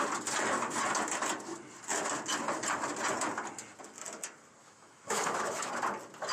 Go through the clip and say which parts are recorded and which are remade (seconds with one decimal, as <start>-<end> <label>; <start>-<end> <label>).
0.0-4.6 recorded; 4.6-5.7 remade; 5.7-6.3 recorded